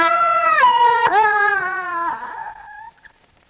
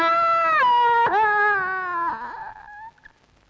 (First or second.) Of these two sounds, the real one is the second